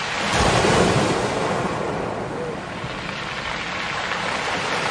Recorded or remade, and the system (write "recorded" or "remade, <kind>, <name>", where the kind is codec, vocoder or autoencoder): recorded